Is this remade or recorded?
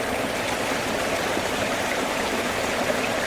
recorded